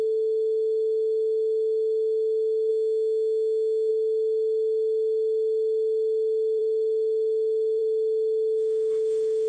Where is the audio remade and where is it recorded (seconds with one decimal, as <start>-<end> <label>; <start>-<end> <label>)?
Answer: 0.0-2.7 remade; 2.7-3.9 recorded; 3.9-9.5 remade